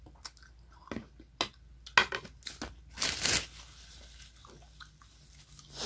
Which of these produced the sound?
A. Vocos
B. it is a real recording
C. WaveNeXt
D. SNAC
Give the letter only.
B